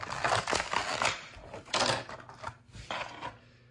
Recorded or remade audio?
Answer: recorded